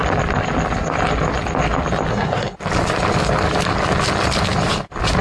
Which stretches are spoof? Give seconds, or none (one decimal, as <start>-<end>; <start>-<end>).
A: 2.1-2.6